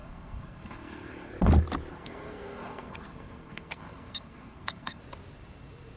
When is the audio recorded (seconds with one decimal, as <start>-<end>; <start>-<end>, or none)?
1.3-1.9; 5.0-6.0